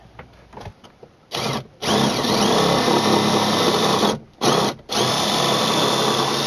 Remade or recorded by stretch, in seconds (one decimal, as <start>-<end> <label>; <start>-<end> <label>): 0.0-1.8 recorded; 1.8-5.6 remade; 5.6-6.5 recorded